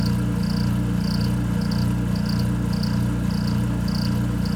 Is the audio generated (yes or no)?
no